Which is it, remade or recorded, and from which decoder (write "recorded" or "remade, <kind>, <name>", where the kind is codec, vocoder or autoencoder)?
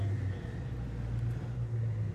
recorded